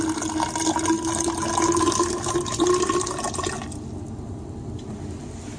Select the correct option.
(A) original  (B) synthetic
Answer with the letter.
A